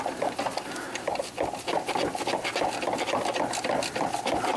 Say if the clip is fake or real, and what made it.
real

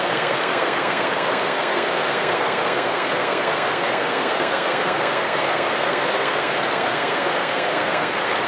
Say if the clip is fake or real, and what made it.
fake, codec, SNAC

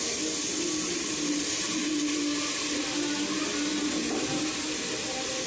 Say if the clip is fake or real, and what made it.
real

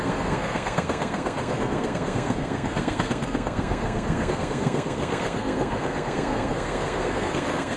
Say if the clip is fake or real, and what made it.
fake, codec, SNAC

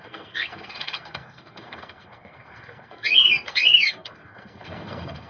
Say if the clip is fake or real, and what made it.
fake, codec, SNAC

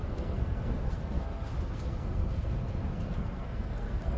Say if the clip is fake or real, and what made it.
fake, codec, SNAC